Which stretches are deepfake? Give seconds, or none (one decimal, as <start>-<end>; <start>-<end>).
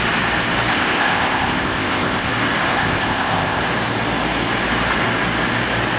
0.7-2.3; 2.7-3.6